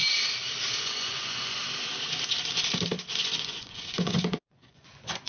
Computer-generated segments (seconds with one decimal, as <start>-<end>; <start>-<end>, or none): 0.8-1.6; 3.2-5.3